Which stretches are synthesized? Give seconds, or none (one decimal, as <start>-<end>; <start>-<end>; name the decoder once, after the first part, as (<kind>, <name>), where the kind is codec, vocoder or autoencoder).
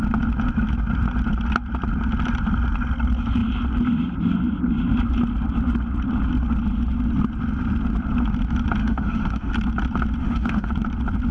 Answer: 8.8-9.5 (autoencoder, DAC-VAE); 10.2-10.7